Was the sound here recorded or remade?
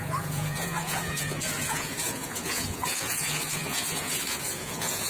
remade